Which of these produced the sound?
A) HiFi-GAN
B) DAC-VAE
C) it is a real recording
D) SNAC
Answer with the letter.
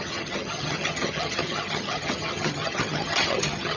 A